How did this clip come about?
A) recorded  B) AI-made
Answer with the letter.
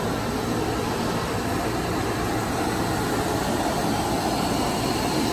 A